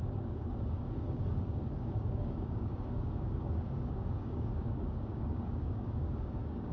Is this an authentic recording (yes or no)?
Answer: no